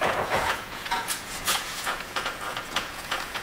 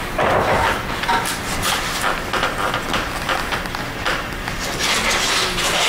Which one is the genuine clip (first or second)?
second